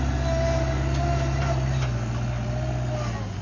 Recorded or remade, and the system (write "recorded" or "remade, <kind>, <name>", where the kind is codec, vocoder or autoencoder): recorded